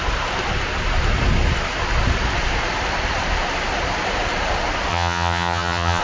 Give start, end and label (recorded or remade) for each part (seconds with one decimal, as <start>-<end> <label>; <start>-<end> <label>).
0.0-4.9 recorded; 4.9-6.0 remade